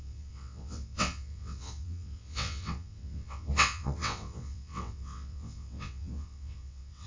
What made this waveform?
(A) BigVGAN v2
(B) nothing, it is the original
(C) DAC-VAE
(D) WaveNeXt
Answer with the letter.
D